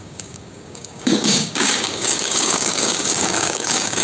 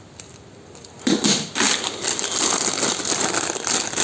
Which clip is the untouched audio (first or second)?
second